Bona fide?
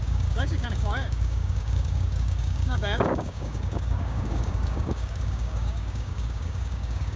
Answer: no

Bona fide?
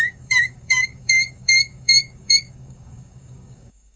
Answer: no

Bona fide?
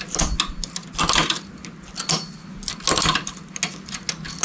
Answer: yes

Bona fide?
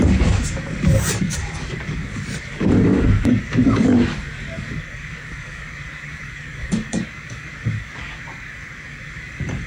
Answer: no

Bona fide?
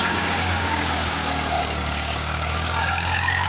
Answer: no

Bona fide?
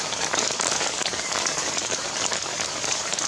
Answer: no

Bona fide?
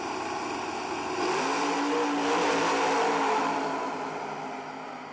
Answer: yes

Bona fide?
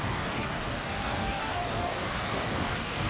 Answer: no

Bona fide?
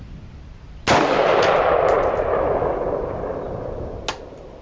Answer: yes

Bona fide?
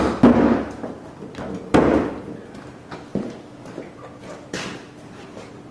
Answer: yes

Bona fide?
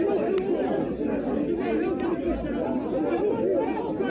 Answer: yes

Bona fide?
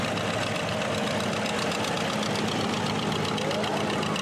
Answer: yes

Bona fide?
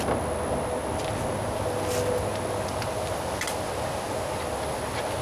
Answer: yes